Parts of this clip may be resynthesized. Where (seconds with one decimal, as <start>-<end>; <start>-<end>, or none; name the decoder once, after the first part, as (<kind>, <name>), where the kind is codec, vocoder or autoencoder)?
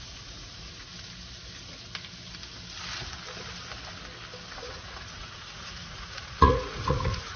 0.0-0.9 (vocoder, Vocos); 4.5-7.4